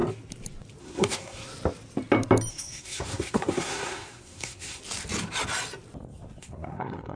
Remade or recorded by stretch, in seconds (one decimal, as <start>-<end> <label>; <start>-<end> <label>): 0.0-0.8 recorded; 0.8-1.4 remade; 1.4-2.5 recorded; 2.5-4.8 remade; 4.8-6.4 recorded; 6.4-7.2 remade